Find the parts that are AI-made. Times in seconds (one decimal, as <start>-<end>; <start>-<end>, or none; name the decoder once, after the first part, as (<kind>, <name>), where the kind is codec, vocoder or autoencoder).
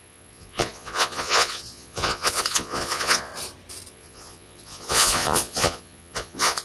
0.0-3.3 (vocoder, Vocos); 3.9-6.6